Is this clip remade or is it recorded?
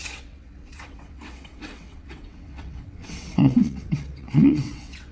remade